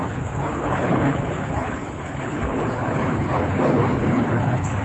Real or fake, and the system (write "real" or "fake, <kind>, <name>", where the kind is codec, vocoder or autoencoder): fake, codec, HILCodec